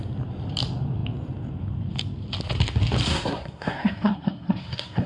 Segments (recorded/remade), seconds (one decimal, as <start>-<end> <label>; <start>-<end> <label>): 0.0-3.1 recorded; 3.1-5.1 remade